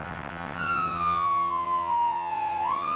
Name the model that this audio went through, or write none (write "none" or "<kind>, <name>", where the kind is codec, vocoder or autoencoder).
vocoder, WaveNeXt